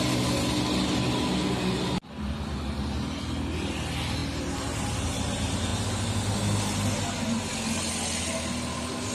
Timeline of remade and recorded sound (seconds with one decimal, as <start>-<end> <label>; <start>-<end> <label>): 0.0-9.1 recorded